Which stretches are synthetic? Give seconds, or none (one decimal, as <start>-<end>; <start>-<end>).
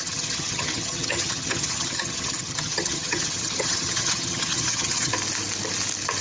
0.0-5.1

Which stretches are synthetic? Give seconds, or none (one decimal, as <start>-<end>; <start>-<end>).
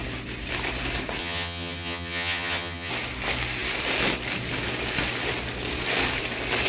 1.2-2.9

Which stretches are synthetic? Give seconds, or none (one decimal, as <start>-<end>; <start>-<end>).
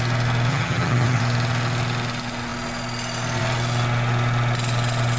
0.5-1.2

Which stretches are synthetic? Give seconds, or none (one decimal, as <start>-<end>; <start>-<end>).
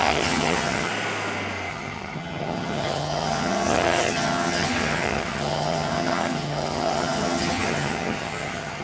0.0-0.9; 1.7-8.8